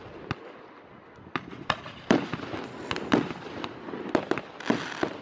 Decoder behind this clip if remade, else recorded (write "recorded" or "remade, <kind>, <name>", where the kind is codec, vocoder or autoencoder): recorded